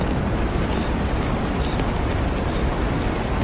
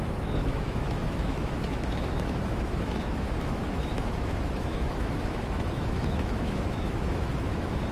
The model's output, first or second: second